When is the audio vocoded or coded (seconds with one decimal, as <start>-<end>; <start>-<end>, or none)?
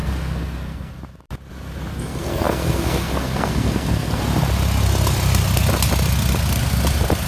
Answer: 0.0-0.9; 1.9-4.2